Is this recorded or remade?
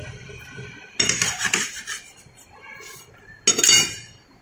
recorded